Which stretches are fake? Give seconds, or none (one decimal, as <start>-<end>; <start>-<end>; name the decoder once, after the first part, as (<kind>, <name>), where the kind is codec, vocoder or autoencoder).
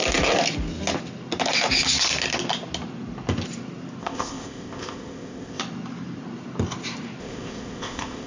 4.0-5.6 (codec, ZipCodec); 7.2-8.3